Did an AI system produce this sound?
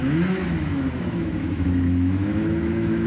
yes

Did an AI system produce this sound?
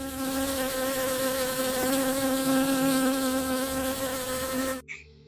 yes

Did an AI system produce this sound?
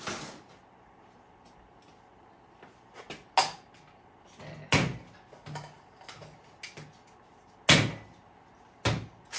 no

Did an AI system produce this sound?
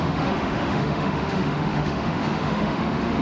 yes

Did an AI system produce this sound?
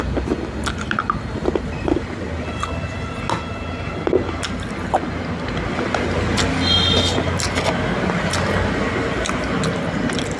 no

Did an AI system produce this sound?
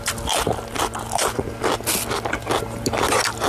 no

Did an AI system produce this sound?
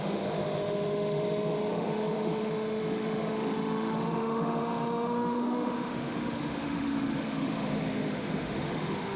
yes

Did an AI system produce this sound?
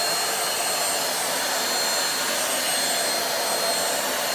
no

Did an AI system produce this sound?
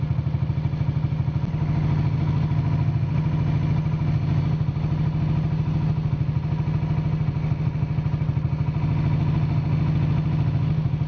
no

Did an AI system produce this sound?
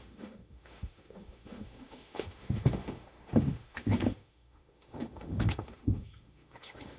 yes